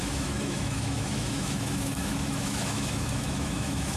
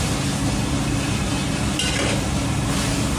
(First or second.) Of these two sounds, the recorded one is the second